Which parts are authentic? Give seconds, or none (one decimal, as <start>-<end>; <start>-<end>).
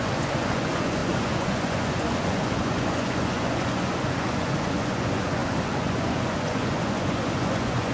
none